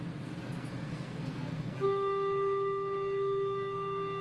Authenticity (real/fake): fake